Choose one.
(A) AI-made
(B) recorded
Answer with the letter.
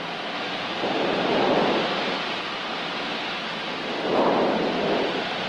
B